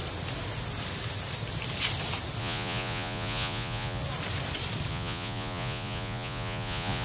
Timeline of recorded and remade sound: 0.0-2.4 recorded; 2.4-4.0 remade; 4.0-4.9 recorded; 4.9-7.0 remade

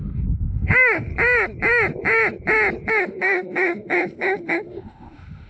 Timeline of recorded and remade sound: 0.0-1.1 remade; 1.1-2.9 recorded; 2.9-5.5 remade

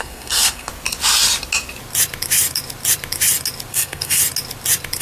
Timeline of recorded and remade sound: 0.0-0.7 remade; 0.7-3.7 recorded; 3.7-4.2 remade; 4.2-5.0 recorded

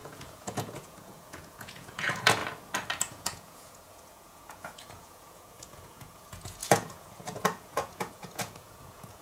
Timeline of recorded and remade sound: 0.0-2.4 remade; 2.4-3.0 recorded; 3.0-9.2 remade